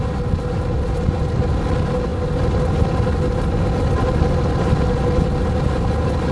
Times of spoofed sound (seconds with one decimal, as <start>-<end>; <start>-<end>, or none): none